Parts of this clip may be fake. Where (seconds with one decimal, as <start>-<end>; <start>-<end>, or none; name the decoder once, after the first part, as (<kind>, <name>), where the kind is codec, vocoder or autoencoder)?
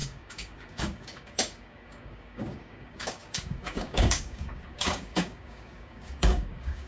0.0-6.9 (codec, DAC)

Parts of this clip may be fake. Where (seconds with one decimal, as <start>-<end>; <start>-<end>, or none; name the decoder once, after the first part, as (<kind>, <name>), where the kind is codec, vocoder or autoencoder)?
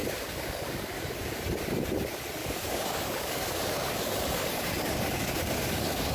0.0-1.4 (codec, DAC); 2.4-6.1